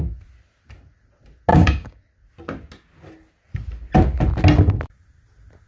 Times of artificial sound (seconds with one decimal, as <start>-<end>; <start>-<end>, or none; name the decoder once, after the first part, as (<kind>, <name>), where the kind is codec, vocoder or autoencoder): 1.5-2.0 (codec, DAC)